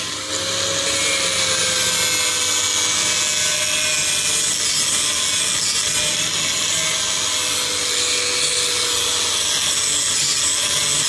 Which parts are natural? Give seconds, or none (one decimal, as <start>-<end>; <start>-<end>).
0.0-11.1